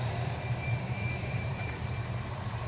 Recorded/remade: remade